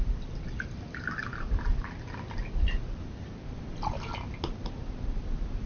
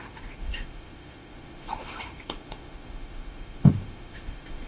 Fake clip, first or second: second